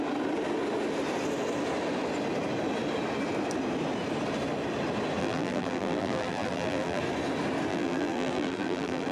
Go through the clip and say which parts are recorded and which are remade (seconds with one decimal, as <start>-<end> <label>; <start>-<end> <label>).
0.0-5.2 recorded; 5.2-7.0 remade; 7.0-7.7 recorded; 7.7-9.1 remade